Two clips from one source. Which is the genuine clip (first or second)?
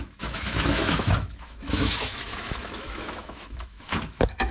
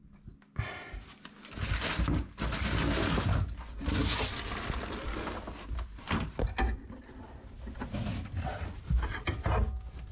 second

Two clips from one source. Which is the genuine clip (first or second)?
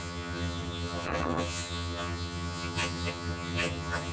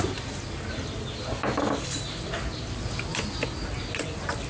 second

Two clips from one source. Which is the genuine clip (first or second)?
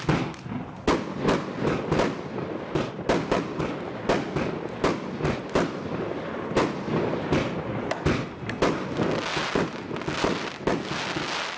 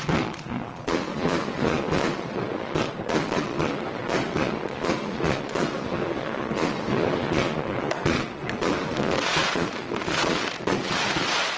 first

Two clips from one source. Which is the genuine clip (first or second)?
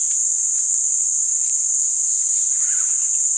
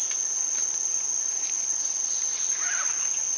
second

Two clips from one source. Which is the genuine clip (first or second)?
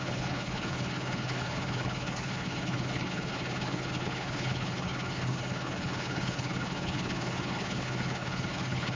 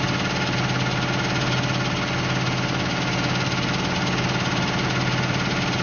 second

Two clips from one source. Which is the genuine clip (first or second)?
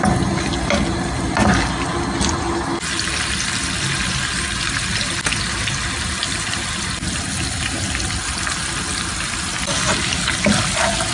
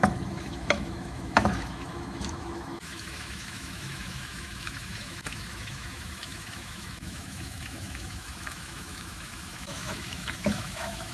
first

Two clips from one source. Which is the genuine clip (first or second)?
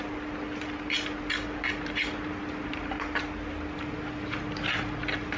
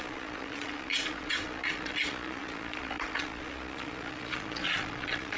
first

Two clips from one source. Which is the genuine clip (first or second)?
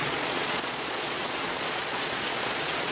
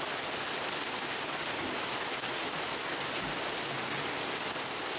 second